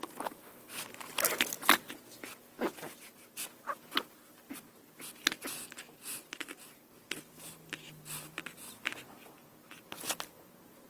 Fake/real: real